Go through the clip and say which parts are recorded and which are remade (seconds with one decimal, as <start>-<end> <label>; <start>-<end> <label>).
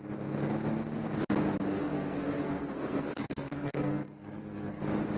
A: 0.0-1.7 recorded; 1.7-4.8 remade; 4.8-5.2 recorded